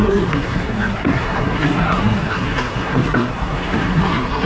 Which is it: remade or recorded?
remade